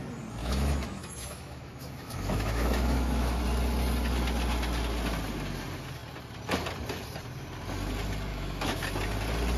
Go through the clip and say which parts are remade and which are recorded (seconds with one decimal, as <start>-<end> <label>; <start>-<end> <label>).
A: 0.0-0.4 recorded; 0.4-3.4 remade; 3.4-8.3 recorded; 8.3-8.8 remade; 8.8-9.6 recorded